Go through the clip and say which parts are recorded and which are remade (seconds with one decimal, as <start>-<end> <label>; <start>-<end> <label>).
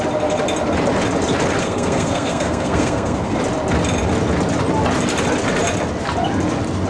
0.0-1.6 recorded; 1.6-3.4 remade; 3.4-6.9 recorded